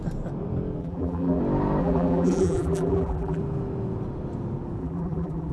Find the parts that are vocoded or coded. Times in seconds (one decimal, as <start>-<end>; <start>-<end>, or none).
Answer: 0.8-1.4; 1.8-3.4; 4.8-5.5